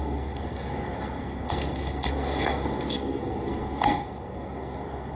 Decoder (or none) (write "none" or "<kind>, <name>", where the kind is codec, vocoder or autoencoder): codec, SNAC